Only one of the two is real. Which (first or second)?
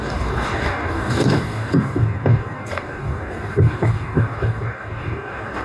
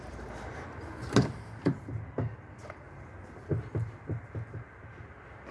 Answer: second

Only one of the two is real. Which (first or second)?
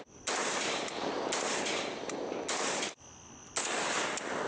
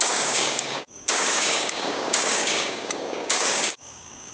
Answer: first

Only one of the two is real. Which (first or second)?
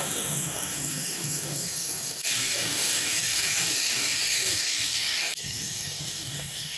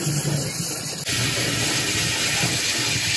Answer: second